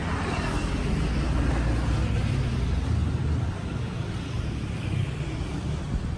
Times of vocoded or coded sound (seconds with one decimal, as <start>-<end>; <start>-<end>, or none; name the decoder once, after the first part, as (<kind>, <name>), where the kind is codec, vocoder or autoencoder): none